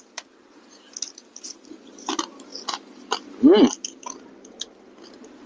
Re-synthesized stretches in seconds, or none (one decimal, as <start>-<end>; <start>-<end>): none